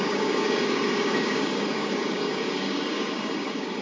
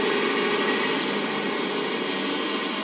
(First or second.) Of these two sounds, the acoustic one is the second